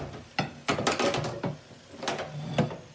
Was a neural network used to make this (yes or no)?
no